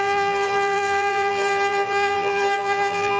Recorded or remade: remade